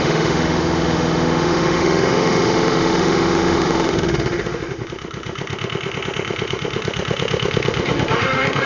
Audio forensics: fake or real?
fake